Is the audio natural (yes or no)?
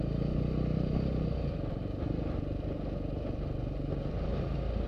yes